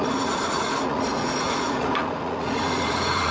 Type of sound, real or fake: fake